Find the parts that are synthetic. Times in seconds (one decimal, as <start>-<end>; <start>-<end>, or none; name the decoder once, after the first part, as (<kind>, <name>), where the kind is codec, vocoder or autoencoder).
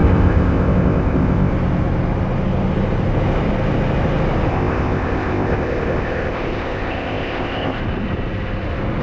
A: 0.0-1.5 (codec, ZipCodec); 4.5-7.8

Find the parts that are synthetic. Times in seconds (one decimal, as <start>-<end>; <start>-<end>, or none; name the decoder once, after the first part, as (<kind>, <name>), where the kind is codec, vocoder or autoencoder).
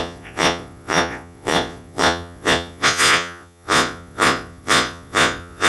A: 0.0-5.7 (vocoder, Vocos)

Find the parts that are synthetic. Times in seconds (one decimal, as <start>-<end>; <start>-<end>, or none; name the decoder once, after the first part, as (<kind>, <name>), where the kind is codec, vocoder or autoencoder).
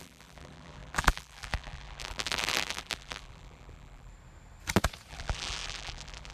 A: 0.0-4.1 (vocoder, BigVGAN v2); 5.1-6.3